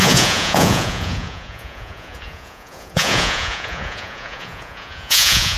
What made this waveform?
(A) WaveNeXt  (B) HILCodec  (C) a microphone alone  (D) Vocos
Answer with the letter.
D